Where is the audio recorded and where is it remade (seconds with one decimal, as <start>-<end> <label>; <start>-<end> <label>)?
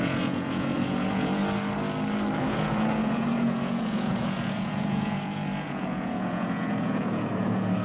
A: 0.0-1.4 remade; 1.4-2.4 recorded; 2.4-7.8 remade